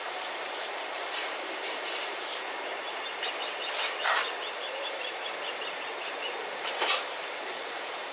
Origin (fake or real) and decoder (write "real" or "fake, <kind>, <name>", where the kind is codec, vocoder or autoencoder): fake, vocoder, BigVGAN v2